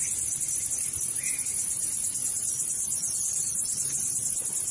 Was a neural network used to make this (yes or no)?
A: no